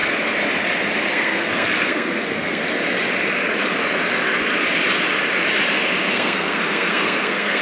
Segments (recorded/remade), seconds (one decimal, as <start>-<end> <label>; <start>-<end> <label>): 0.0-1.1 recorded; 1.1-2.6 remade; 2.6-6.1 recorded; 6.1-7.6 remade

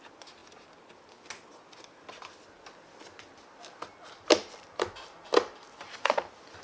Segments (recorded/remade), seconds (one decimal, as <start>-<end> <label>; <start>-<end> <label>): 0.0-6.6 recorded

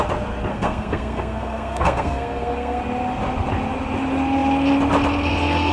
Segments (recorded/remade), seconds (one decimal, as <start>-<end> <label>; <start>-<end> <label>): 0.0-0.5 recorded; 0.5-2.8 remade; 2.8-5.7 recorded

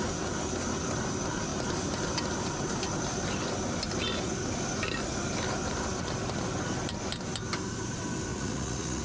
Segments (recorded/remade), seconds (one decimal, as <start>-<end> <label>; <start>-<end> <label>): 0.0-8.3 recorded; 8.3-9.0 remade

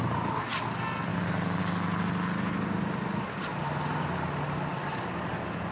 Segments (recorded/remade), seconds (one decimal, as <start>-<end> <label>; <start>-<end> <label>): 0.0-5.7 recorded